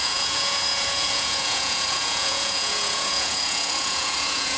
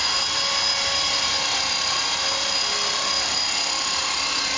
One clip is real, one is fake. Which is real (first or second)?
second